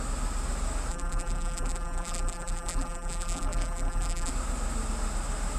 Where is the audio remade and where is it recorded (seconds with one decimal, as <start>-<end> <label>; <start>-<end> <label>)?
0.0-0.9 recorded; 0.9-4.3 remade; 4.3-5.6 recorded

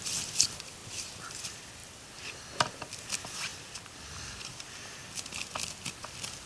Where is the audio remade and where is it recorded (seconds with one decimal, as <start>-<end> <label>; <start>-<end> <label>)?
0.0-1.8 recorded; 1.8-3.0 remade; 3.0-3.5 recorded; 3.5-5.3 remade; 5.3-6.5 recorded

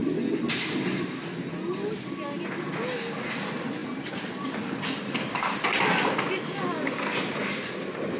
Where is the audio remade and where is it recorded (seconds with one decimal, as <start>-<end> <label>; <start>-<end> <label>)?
0.0-8.2 recorded

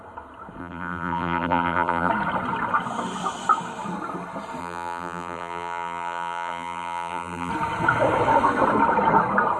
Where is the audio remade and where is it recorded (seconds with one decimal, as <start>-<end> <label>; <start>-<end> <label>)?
0.0-0.6 recorded; 0.6-2.1 remade; 2.1-4.6 recorded; 4.6-7.5 remade; 7.5-9.6 recorded